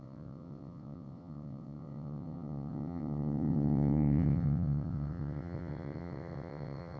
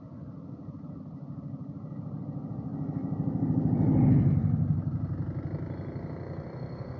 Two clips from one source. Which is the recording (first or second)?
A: second